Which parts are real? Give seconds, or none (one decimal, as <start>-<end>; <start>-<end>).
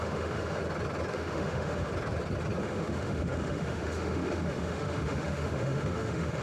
0.6-1.1; 1.9-2.6